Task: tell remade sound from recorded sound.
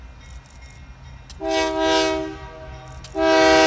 recorded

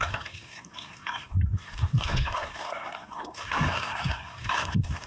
remade